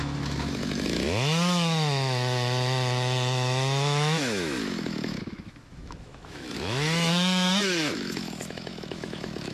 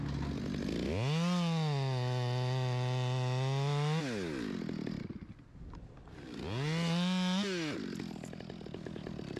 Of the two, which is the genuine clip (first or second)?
second